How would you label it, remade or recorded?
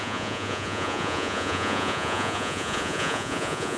remade